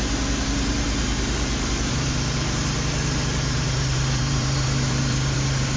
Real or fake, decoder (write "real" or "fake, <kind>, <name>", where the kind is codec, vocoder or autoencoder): fake, vocoder, BigVGAN v2